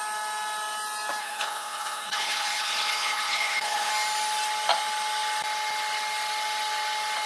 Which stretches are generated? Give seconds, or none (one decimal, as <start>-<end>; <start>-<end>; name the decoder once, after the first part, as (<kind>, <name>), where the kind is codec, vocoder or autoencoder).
1.2-3.9 (codec, HILCodec)